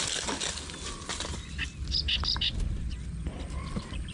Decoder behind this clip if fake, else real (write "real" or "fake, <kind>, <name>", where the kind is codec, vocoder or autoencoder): real